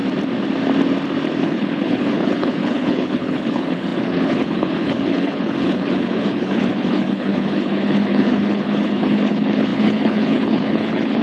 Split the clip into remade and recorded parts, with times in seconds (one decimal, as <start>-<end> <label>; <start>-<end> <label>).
0.0-1.4 recorded; 1.4-11.2 remade